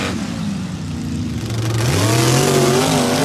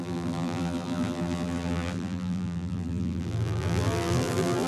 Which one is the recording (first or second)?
first